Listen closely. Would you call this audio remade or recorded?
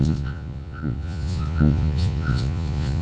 remade